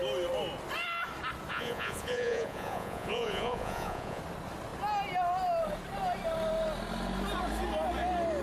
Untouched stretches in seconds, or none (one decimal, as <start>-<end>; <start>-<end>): 0.0-1.5; 4.2-8.4

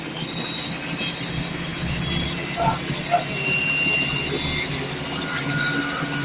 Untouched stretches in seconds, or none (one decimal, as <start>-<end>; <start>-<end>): 0.0-6.2

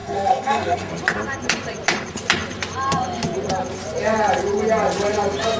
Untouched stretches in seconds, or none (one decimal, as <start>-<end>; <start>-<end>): 0.9-5.6

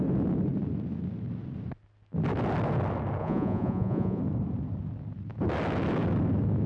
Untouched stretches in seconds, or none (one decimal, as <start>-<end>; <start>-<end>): 0.0-3.2; 4.2-6.7

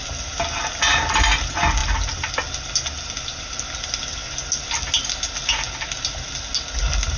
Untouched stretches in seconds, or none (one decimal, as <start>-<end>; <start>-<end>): 0.0-7.2